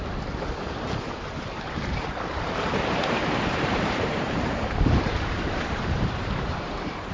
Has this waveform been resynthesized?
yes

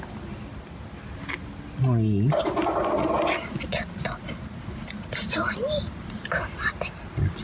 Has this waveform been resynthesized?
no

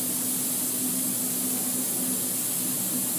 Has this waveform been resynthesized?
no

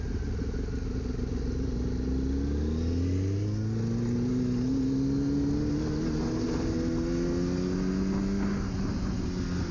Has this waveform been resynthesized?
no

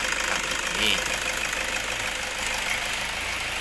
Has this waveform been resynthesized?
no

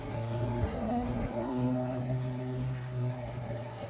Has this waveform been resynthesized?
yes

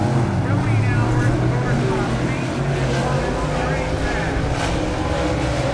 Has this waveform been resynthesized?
no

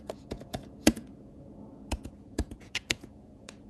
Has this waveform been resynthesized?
yes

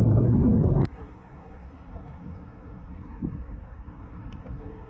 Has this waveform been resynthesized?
yes